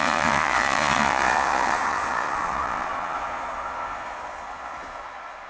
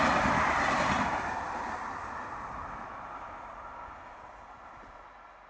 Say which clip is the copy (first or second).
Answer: first